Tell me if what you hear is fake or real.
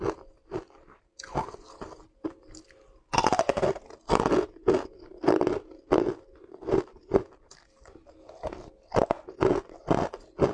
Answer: real